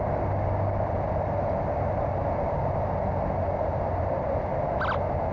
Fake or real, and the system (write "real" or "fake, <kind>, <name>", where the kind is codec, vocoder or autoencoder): real